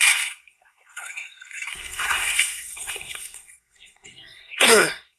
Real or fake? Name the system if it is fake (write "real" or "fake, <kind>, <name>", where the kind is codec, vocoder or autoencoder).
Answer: fake, codec, SNAC